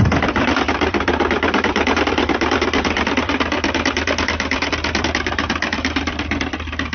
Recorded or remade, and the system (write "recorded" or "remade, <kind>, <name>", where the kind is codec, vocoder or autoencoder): remade, vocoder, BigVGAN v2